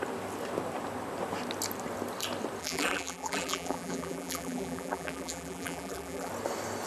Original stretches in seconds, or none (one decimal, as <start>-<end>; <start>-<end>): 0.0-2.6; 6.3-6.9